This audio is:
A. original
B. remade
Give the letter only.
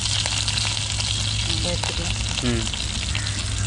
A